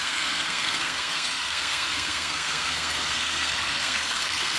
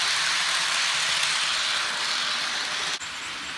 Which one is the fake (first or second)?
first